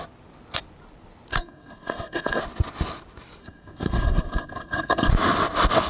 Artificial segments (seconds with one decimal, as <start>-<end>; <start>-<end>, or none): 1.3-2.4; 3.4-5.1